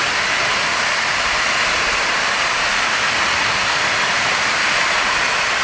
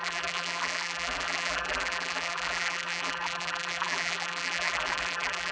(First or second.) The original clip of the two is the first